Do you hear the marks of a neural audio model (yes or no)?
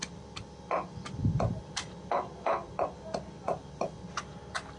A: no